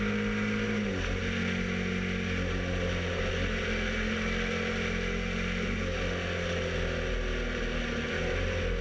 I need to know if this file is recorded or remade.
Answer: recorded